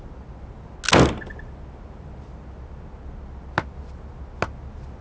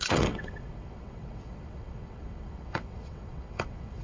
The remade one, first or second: second